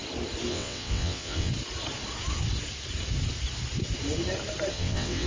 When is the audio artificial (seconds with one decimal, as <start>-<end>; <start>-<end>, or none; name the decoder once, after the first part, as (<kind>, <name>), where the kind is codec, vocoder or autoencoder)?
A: 0.5-1.5 (vocoder, WaveNeXt); 4.7-5.3